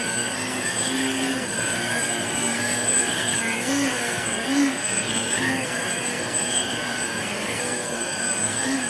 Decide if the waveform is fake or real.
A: fake